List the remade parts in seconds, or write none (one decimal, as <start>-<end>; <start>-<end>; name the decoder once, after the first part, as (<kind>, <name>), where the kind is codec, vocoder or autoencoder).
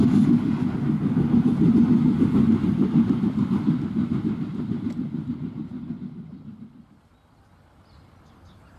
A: 2.8-3.4 (vocoder, BigVGAN v2)